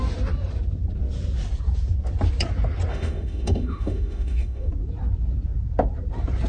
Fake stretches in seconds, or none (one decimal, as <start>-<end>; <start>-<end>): 2.9-4.7